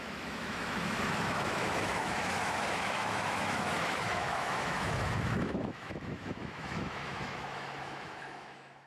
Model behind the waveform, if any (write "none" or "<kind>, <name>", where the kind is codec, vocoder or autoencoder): autoencoder, DAC-VAE